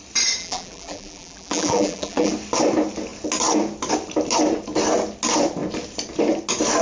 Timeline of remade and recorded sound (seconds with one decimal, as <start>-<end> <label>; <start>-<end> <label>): 0.0-0.4 recorded; 0.4-2.3 remade; 2.3-6.8 recorded